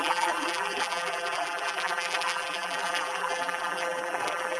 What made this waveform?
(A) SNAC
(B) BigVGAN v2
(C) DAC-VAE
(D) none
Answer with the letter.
B